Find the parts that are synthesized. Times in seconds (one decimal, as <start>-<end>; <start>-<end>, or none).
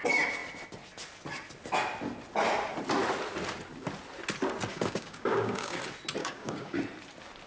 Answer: 4.7-5.8; 6.2-6.8